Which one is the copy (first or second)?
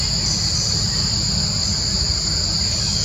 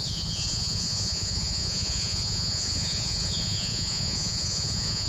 second